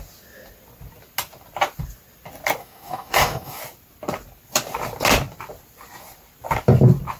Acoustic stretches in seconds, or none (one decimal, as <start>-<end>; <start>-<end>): 0.0-2.6; 3.6-7.2